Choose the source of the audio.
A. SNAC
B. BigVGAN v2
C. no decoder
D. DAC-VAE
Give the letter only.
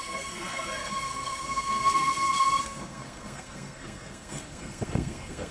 A